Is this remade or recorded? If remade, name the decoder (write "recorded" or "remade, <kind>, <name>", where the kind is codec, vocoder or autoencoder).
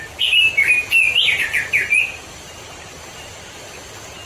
recorded